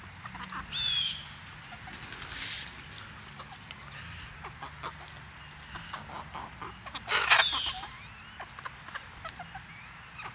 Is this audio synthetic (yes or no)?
no